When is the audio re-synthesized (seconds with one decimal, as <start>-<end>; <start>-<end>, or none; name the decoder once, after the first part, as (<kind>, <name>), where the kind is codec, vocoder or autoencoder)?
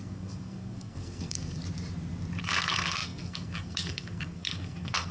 0.0-1.6 (codec, SNAC); 2.4-5.1